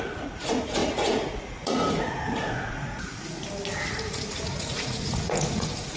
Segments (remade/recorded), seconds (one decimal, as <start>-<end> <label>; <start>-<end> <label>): 0.0-3.4 remade; 3.4-3.9 recorded; 3.9-6.0 remade